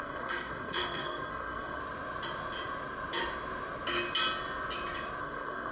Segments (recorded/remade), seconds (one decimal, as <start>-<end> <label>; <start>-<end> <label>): 0.0-1.8 remade; 1.8-5.2 recorded; 5.2-5.7 remade